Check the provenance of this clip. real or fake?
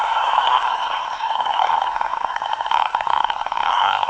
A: fake